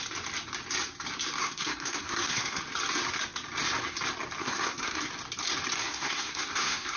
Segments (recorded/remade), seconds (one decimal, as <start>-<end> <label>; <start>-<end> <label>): 0.0-1.4 recorded; 1.4-2.6 remade; 2.6-4.4 recorded; 4.4-5.1 remade; 5.1-5.8 recorded; 5.8-7.0 remade